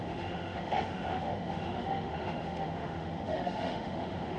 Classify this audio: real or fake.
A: fake